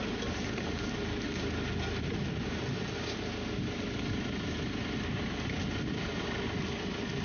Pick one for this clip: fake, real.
real